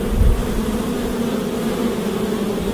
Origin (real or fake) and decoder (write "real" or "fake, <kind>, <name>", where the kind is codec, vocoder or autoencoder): real